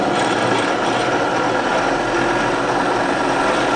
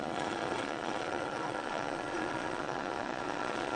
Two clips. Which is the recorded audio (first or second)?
first